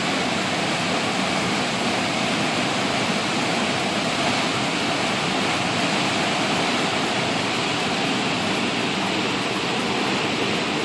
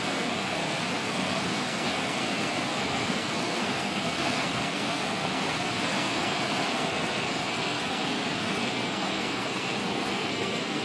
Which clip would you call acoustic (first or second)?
first